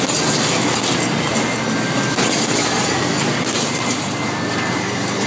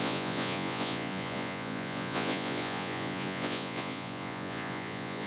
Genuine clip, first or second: first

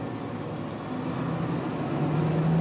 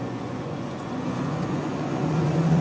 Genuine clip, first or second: first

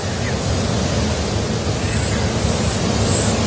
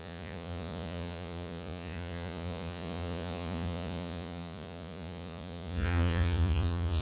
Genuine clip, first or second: first